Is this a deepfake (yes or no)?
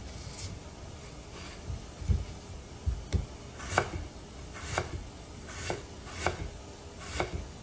no